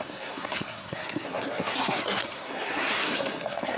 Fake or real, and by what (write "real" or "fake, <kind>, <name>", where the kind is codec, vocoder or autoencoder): fake, codec, SNAC